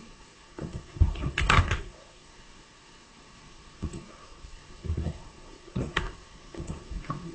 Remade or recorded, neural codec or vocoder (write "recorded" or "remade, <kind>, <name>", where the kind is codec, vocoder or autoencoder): remade, codec, SNAC